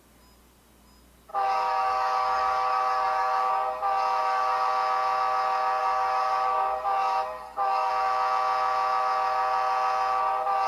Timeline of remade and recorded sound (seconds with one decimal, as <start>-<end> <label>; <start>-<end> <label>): 0.0-1.3 recorded; 1.3-3.5 remade; 3.5-4.2 recorded; 4.2-4.7 remade; 4.7-5.8 recorded; 5.8-7.9 remade; 7.9-10.7 recorded